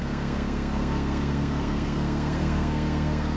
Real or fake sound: fake